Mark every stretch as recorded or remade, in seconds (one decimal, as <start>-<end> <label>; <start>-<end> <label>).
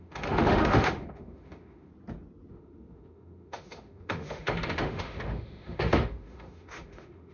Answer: 0.0-1.9 remade; 1.9-2.5 recorded; 2.5-7.3 remade